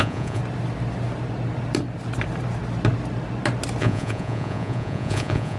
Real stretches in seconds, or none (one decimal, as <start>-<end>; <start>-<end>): 0.4-3.8